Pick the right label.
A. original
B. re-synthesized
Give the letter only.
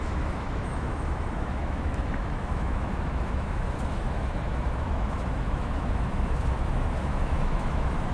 B